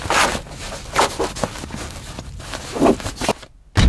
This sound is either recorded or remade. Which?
recorded